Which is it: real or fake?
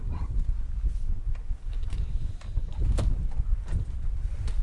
real